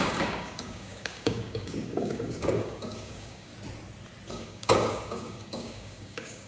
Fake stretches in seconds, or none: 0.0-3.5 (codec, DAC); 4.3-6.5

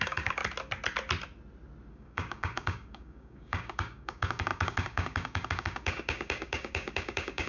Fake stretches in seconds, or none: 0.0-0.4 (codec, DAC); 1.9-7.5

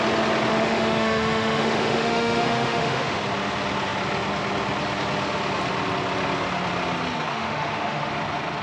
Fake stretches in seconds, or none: 0.5-3.2 (autoencoder, DAC-VAE); 7.3-8.1